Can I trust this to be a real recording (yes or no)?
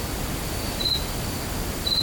yes